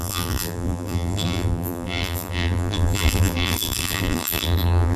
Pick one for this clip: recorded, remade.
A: remade